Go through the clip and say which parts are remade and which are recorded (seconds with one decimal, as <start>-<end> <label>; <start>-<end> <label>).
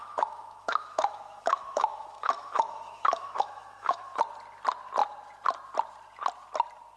0.0-4.2 remade; 4.2-7.0 recorded